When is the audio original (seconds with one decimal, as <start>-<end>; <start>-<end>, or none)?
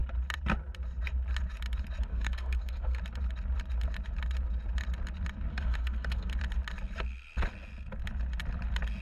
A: 0.0-2.1; 3.0-5.5; 6.3-9.0